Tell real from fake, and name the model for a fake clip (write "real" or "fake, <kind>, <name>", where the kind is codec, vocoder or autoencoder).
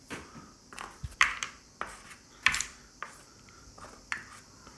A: fake, vocoder, BigVGAN v2